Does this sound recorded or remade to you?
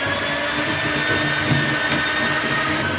recorded